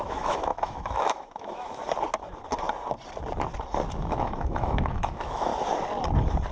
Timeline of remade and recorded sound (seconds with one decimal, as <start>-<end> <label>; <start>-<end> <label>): 0.0-1.8 remade; 1.8-4.0 recorded; 4.0-5.5 remade; 5.5-6.5 recorded